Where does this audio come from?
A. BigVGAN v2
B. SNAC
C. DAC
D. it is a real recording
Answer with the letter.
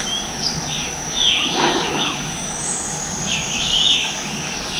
C